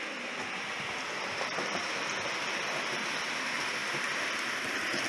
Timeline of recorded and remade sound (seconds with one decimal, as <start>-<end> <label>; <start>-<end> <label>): 0.0-5.1 recorded